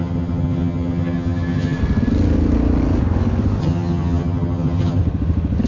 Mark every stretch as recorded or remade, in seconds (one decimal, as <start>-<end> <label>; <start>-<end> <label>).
0.0-1.8 remade; 1.8-3.6 recorded; 3.6-5.0 remade; 5.0-5.7 recorded

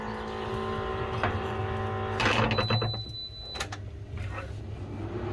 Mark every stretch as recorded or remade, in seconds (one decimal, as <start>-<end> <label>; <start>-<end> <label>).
0.0-0.9 recorded; 0.9-1.6 remade; 1.6-5.3 recorded

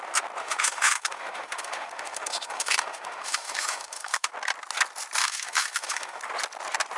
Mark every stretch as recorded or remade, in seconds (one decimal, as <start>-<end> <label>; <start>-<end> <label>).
0.0-0.4 recorded; 0.4-4.3 remade; 4.3-5.2 recorded; 5.2-6.2 remade; 6.2-7.0 recorded

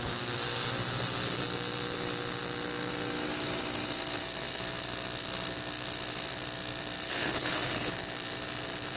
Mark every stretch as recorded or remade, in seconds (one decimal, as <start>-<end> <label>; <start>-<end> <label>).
0.0-7.1 recorded; 7.1-7.9 remade; 7.9-9.0 recorded

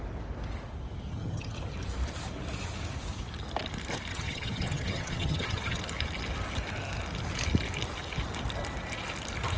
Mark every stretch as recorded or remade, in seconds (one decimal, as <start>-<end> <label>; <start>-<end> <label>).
0.0-1.1 recorded; 1.1-1.6 remade; 1.6-4.1 recorded; 4.1-5.8 remade; 5.8-9.6 recorded

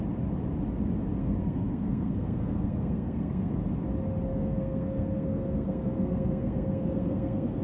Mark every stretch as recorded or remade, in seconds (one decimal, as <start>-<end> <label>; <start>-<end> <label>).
0.0-1.2 recorded; 1.2-3.5 remade; 3.5-4.3 recorded; 4.3-7.6 remade

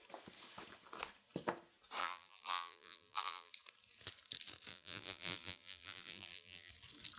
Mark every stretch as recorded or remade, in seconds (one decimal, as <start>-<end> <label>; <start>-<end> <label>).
0.0-2.0 recorded; 2.0-3.5 remade; 3.5-4.7 recorded; 4.7-6.7 remade; 6.7-7.2 recorded